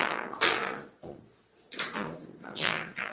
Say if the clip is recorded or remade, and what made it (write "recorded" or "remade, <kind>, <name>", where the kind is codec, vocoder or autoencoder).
remade, vocoder, Vocos